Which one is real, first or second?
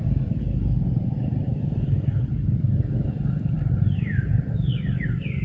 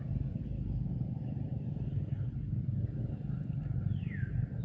second